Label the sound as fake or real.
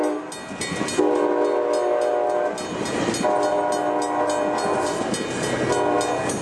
real